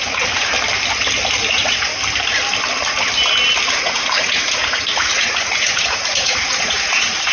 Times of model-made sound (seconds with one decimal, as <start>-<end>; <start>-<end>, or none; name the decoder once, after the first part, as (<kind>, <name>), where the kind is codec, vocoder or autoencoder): 0.0-0.5 (vocoder, Vocos); 1.5-1.9; 3.7-7.3